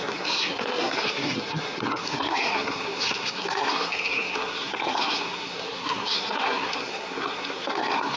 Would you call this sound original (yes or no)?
no